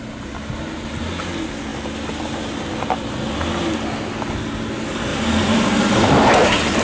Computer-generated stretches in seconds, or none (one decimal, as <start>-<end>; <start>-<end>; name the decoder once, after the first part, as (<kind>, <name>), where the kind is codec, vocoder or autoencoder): 5.1-6.1 (vocoder, BigVGAN v2)